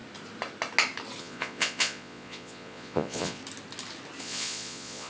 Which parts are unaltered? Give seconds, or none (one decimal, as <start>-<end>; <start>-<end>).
0.0-1.2; 3.4-4.2